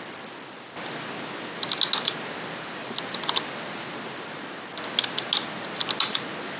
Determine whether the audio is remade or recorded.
recorded